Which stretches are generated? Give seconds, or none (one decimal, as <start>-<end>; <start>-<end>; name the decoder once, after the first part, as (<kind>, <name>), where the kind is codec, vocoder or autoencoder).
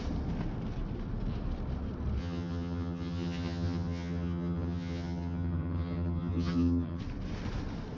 2.2-7.0 (vocoder, HiFi-GAN)